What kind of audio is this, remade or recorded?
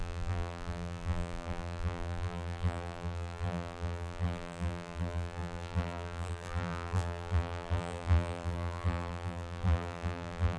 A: remade